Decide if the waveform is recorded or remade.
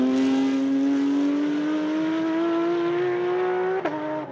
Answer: recorded